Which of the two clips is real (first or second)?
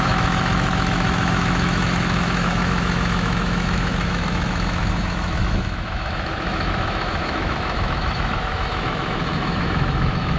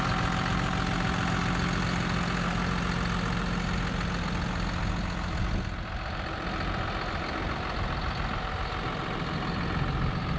second